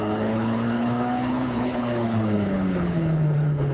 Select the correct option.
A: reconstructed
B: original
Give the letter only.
A